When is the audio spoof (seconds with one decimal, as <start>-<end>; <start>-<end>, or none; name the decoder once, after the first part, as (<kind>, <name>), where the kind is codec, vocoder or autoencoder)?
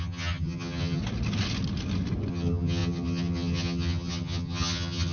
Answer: 0.0-1.0 (vocoder, HiFi-GAN); 2.3-5.1